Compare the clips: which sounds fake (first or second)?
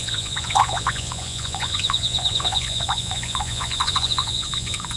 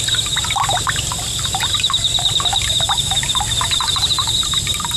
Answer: first